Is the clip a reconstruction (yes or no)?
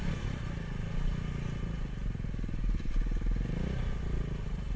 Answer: no